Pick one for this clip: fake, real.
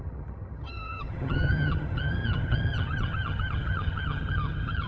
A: fake